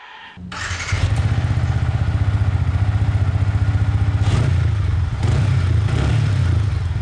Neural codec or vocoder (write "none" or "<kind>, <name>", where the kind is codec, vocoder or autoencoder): none